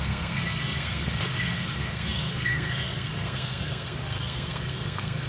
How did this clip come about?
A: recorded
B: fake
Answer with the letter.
B